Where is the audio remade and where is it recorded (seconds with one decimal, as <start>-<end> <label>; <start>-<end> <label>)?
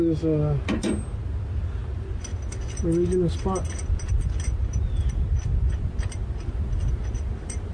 0.0-7.7 recorded